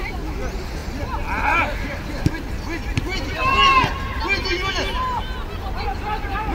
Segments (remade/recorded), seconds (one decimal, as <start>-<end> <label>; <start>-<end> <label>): 0.0-0.8 remade; 0.8-2.8 recorded; 2.8-3.7 remade; 3.7-5.6 recorded; 5.6-6.5 remade